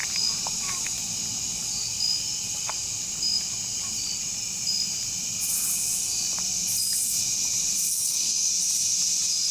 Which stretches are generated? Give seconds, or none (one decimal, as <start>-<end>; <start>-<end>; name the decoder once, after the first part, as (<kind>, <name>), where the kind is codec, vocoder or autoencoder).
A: 7.9-8.5 (codec, SNAC)